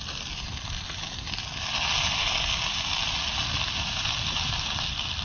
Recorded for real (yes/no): yes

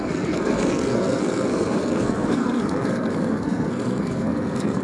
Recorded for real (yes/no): no